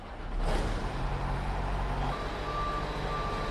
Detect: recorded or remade recorded